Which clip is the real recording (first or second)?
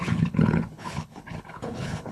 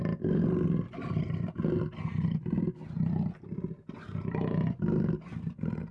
second